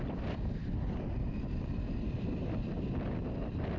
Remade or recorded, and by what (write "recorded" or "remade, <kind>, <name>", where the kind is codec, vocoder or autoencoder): recorded